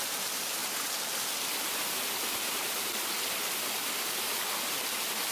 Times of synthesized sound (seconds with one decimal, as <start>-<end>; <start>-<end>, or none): none